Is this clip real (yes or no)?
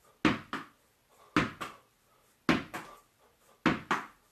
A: yes